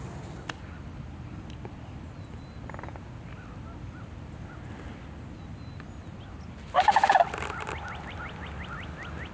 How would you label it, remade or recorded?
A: recorded